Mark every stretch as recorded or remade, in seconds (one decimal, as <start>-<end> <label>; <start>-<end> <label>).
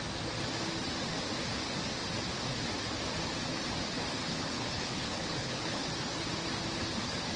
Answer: 0.0-4.2 recorded; 4.2-5.9 remade; 5.9-7.4 recorded